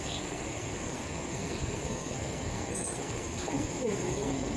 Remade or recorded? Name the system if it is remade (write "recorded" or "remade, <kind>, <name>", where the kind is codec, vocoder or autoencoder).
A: remade, codec, SNAC